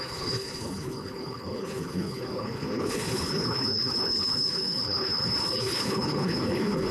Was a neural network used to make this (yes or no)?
yes